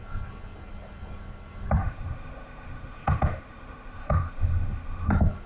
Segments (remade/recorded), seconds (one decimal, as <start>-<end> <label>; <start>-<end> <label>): 0.0-1.8 recorded; 1.8-5.1 remade; 5.1-5.5 recorded